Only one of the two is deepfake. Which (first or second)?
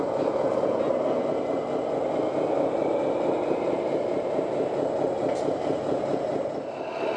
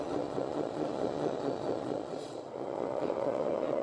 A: second